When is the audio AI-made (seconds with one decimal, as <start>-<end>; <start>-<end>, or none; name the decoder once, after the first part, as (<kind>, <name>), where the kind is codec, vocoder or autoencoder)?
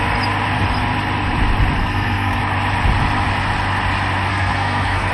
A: 1.8-2.4 (codec, SNAC); 4.3-5.1